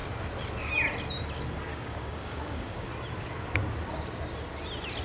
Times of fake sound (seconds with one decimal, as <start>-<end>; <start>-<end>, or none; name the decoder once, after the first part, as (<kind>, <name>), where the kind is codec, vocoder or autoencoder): 1.7-2.9 (codec, DAC)